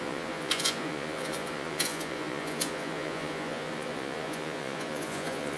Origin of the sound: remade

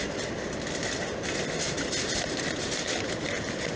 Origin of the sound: recorded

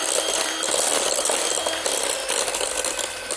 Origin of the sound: recorded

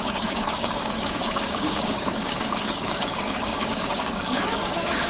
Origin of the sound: remade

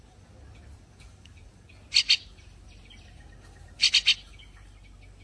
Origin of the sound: recorded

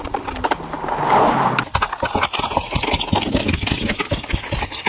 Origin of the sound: recorded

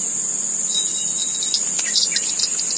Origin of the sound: recorded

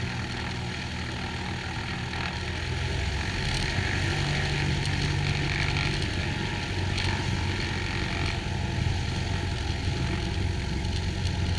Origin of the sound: recorded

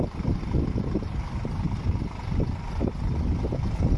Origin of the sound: remade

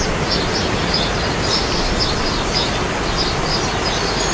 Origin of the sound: recorded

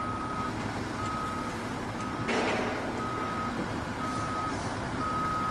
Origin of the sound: recorded